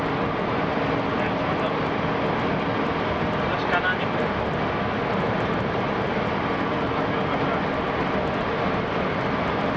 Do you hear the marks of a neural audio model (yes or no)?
no